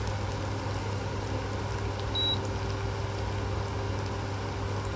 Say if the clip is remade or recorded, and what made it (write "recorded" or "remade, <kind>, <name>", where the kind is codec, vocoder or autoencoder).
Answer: recorded